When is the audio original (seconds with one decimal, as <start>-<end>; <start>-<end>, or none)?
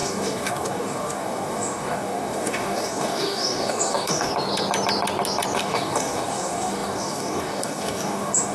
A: 4.3-5.6